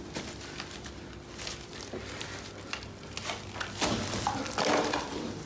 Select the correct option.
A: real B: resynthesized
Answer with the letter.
A